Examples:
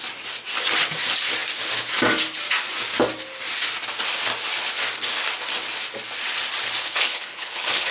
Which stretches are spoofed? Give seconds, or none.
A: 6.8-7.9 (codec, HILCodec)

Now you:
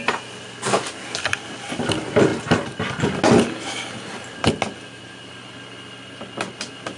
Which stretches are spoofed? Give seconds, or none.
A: none

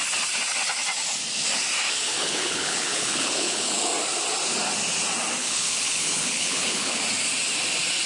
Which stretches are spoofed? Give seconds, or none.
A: 2.1-3.9 (codec, HILCodec); 5.4-7.0

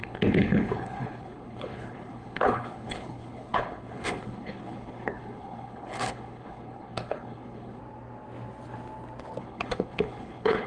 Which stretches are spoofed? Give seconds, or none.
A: 0.0-7.8 (codec, HILCodec); 9.4-10.7